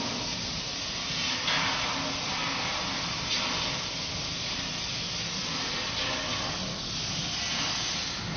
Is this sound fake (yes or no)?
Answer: no